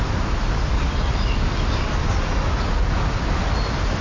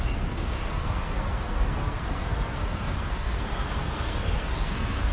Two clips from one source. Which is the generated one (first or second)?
second